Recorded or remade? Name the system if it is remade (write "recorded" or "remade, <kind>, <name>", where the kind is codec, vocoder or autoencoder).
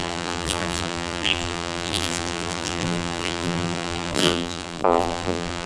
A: remade, vocoder, BigVGAN v2